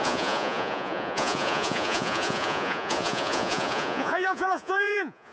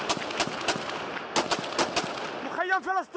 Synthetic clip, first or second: first